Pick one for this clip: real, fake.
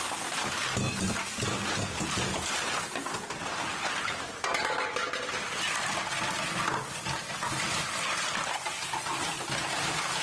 real